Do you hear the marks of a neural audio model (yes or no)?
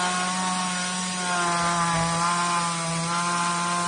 no